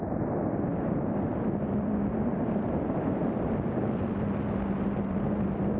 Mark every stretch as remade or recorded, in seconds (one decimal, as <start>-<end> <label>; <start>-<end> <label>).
0.0-5.8 recorded